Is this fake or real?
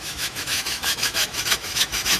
fake